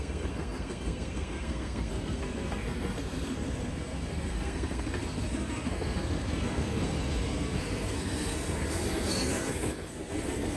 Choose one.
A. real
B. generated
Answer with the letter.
B